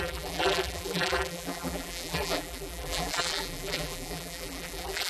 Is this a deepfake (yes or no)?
yes